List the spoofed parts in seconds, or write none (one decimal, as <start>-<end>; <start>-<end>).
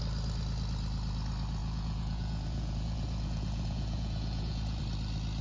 1.6-4.8